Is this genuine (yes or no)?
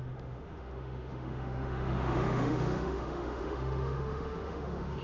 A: no